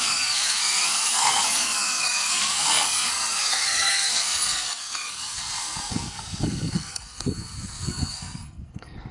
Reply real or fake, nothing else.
fake